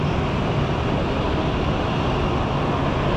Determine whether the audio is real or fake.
real